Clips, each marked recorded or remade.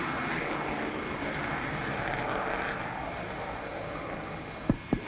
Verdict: recorded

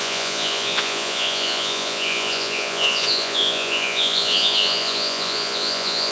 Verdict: remade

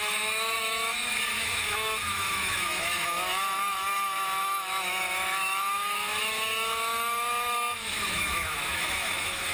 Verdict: remade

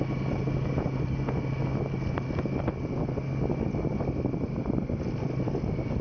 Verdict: recorded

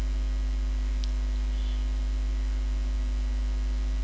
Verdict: recorded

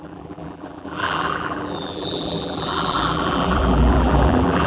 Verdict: remade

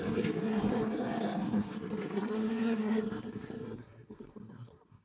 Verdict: remade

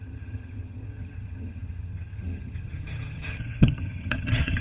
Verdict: remade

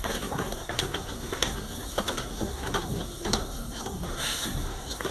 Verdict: remade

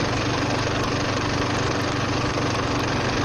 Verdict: recorded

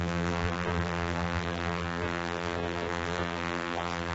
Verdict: remade